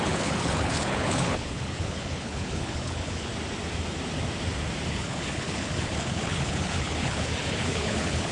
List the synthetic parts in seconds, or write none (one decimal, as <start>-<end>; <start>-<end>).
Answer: 0.0-3.3; 4.9-8.3